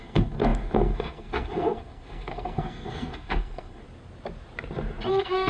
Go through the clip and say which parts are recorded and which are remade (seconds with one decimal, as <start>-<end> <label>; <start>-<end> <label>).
0.0-3.8 remade; 3.8-5.1 recorded; 5.1-5.5 remade